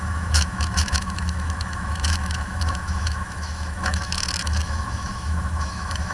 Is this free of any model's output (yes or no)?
no